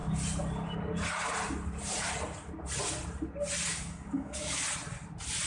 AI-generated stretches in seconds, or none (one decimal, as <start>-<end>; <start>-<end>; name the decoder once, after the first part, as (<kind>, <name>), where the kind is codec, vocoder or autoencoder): 3.7-4.6 (codec, DAC)